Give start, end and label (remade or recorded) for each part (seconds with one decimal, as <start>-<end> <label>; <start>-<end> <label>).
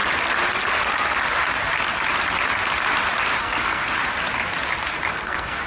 0.0-3.4 recorded; 3.4-3.8 remade; 3.8-5.1 recorded; 5.1-5.7 remade